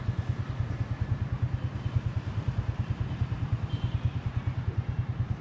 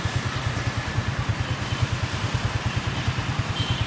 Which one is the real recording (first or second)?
first